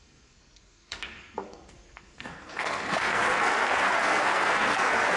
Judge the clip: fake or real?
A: fake